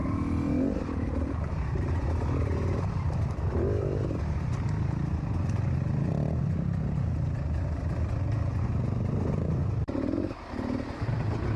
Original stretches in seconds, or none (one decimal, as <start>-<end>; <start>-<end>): 0.0-11.6